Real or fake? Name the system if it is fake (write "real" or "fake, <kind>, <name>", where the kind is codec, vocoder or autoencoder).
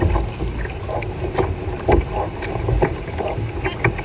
real